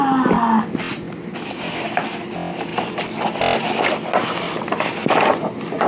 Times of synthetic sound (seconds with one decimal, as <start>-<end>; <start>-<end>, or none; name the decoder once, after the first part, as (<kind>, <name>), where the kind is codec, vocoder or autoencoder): none